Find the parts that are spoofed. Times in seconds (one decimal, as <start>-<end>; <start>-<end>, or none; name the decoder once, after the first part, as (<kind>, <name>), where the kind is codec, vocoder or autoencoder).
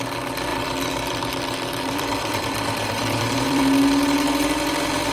0.5-3.6 (vocoder, BigVGAN v2)